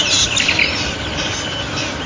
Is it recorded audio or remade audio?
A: recorded